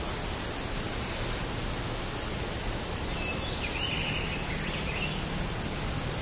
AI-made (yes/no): no